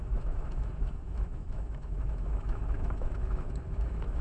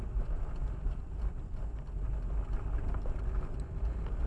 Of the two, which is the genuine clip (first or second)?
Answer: second